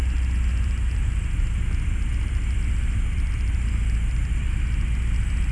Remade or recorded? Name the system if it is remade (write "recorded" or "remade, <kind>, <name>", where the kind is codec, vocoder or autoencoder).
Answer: recorded